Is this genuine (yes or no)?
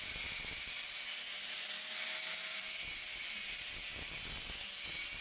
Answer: yes